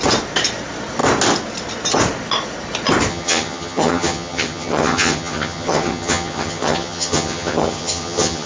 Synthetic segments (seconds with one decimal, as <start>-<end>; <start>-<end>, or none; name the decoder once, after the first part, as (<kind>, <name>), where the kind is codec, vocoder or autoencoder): 3.1-8.5 (vocoder, HiFi-GAN)